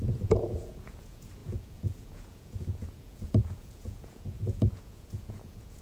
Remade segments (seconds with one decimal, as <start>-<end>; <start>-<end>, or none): 0.0-5.8